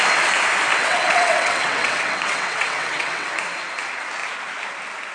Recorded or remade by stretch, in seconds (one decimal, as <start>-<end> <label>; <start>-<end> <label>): 0.0-0.7 recorded; 0.7-3.3 remade; 3.3-5.1 recorded